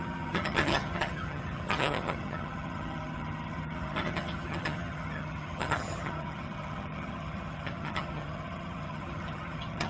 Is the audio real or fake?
fake